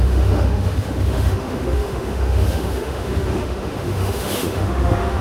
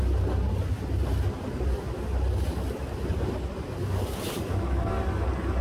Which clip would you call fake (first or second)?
first